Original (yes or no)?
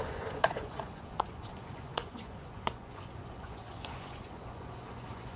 no